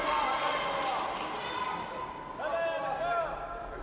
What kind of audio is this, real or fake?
real